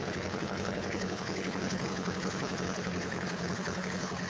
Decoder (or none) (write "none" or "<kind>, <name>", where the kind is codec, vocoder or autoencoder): codec, HILCodec